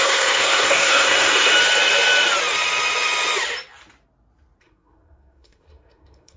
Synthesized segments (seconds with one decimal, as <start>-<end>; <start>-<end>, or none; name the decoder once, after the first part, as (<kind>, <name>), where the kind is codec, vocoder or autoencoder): 0.0-1.5 (codec, SNAC); 4.6-6.4